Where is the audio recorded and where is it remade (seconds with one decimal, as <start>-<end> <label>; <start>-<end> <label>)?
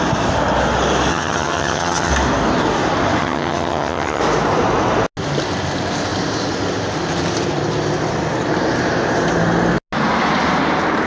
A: 0.0-1.1 recorded; 1.1-2.1 remade; 2.1-3.2 recorded; 3.2-4.2 remade; 4.2-11.1 recorded